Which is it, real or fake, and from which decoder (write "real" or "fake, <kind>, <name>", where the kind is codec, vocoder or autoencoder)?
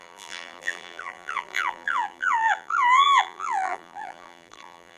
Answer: fake, vocoder, BigVGAN v2